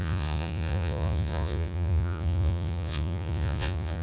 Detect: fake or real fake